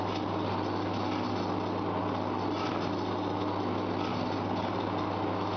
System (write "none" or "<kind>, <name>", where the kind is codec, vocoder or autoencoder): none